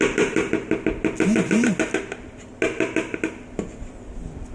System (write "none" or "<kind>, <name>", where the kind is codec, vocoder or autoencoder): none